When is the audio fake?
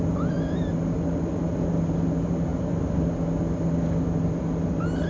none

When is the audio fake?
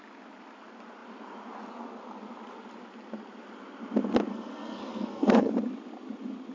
4.3-5.5 (codec, SNAC)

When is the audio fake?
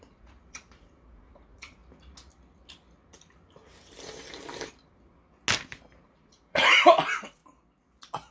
0.0-1.8 (vocoder, Vocos); 6.1-7.4